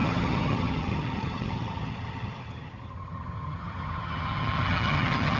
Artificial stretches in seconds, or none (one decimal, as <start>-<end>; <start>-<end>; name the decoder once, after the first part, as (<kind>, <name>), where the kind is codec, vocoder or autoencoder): 0.0-5.4 (vocoder, HiFi-GAN)